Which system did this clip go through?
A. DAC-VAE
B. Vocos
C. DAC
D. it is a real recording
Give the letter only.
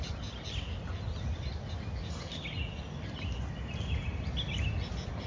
D